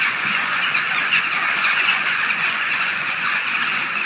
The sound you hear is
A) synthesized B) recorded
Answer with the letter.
A